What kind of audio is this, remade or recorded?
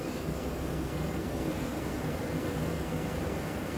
remade